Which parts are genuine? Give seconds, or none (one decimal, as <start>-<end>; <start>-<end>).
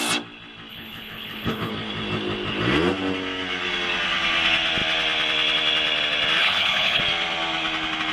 0.0-0.7; 1.7-6.4; 7.0-8.1